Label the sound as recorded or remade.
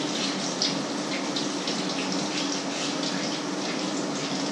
recorded